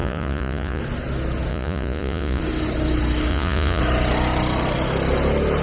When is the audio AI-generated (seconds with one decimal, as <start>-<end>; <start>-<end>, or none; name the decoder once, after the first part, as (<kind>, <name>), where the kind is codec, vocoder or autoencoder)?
0.0-0.8 (vocoder, Vocos); 1.5-2.4; 3.3-3.8